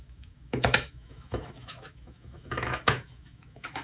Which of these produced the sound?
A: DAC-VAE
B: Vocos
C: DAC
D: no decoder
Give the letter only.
A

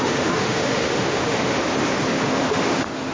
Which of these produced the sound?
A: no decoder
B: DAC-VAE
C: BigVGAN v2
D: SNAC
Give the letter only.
B